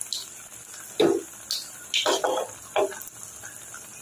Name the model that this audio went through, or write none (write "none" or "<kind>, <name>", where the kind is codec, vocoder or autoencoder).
none